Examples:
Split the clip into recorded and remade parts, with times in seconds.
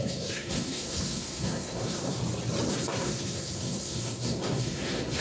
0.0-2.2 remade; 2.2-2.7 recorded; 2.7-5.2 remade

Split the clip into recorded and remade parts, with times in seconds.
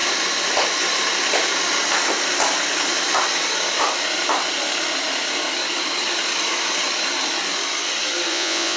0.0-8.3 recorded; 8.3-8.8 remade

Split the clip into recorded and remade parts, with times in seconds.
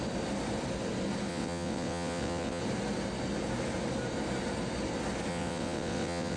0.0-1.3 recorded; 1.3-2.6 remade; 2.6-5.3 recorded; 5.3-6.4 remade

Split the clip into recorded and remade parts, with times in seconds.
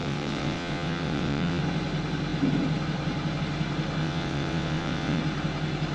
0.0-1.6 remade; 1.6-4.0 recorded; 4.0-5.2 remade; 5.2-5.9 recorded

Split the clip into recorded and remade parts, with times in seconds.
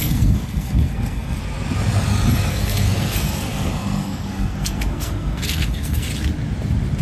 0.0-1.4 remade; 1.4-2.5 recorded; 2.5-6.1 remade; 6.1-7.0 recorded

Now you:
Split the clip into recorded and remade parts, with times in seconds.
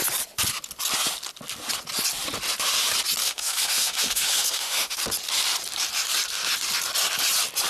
0.0-3.2 recorded; 3.2-5.0 remade; 5.0-7.7 recorded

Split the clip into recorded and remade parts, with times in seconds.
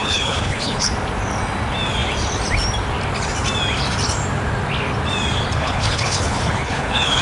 0.0-0.9 remade; 0.9-5.6 recorded; 5.6-7.2 remade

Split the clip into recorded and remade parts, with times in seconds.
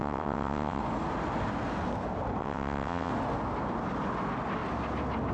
0.0-0.8 remade; 0.8-2.4 recorded; 2.4-3.1 remade; 3.1-5.3 recorded